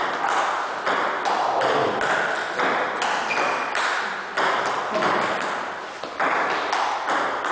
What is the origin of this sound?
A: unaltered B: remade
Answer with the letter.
A